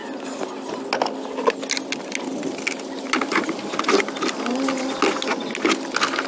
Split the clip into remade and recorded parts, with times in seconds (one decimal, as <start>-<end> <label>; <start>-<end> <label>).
0.0-6.3 recorded